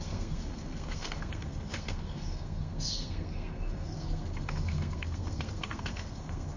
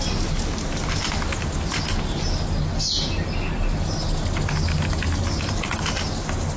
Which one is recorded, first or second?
second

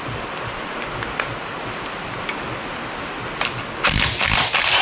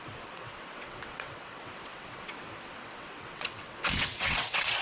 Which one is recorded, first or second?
first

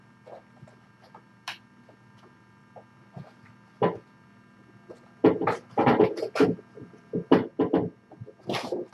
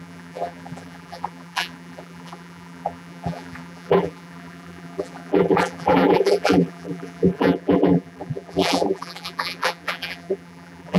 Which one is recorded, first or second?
first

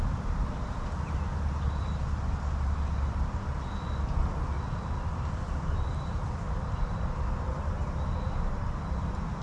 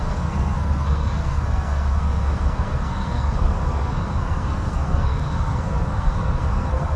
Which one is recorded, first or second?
first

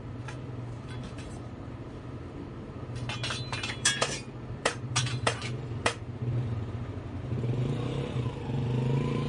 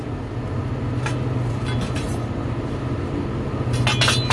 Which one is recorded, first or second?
second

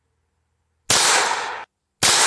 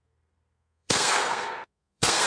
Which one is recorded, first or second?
first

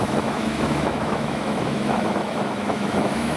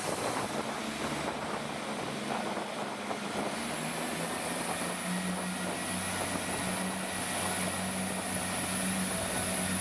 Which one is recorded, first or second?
second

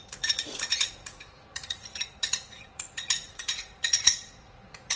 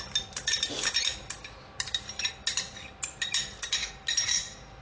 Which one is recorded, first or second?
second